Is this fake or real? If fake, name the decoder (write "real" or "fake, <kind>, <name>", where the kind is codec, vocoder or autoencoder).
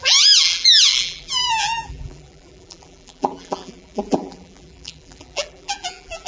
fake, vocoder, BigVGAN v2